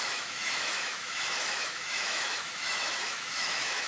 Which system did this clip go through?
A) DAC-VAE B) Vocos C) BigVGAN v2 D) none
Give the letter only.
A